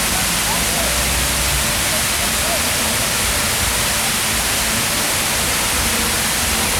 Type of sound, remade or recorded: recorded